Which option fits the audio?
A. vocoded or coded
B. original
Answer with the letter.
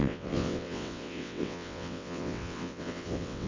A